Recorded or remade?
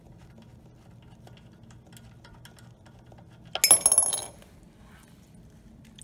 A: recorded